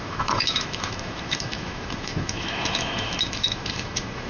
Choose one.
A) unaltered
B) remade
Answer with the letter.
B